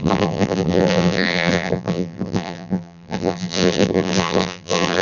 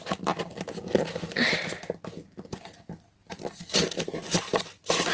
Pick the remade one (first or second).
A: first